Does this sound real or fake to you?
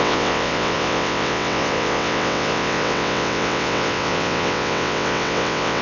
fake